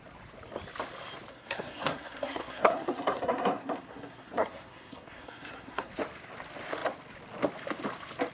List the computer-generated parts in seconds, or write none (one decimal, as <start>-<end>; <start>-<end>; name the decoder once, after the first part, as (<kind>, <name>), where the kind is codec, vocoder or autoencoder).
1.3-5.9 (codec, SNAC)